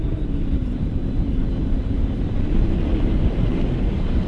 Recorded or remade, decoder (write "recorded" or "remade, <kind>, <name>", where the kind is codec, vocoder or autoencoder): remade, vocoder, BigVGAN v2